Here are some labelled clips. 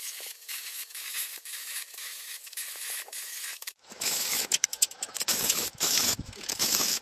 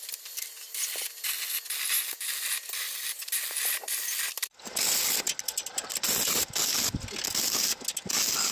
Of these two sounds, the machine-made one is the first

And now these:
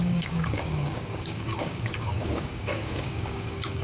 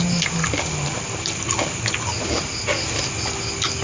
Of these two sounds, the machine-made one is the first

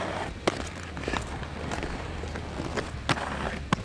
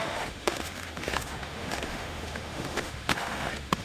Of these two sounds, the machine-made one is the second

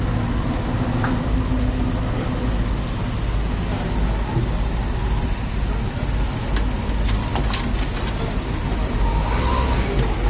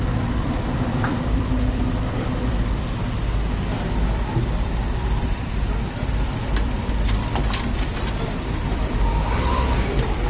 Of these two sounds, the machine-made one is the second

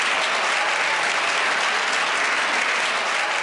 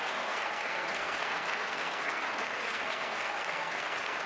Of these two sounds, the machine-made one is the second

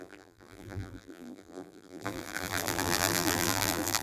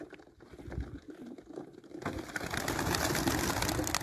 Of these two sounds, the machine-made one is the first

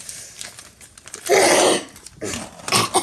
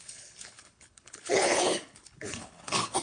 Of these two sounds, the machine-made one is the second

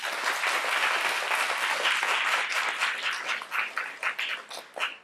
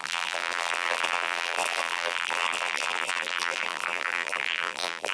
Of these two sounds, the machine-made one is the second